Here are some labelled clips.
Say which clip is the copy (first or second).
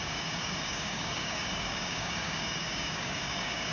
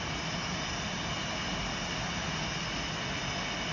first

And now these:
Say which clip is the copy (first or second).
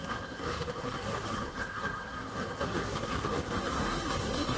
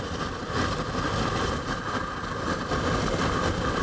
first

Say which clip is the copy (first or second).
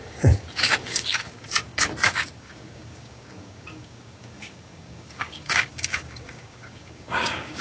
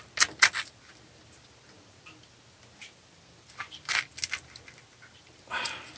first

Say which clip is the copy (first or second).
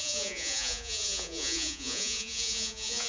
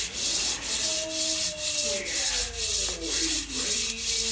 first